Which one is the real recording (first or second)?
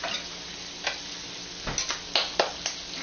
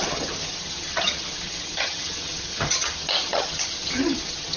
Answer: first